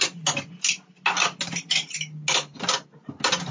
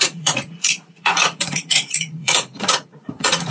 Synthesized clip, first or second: second